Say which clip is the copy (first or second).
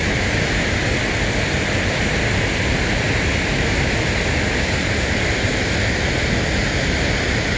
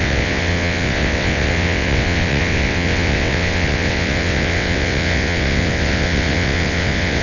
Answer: second